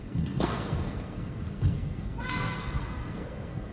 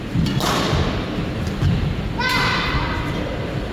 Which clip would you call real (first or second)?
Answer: second